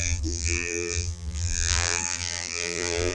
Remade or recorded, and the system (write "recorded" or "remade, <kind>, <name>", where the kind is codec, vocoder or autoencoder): remade, vocoder, BigVGAN v2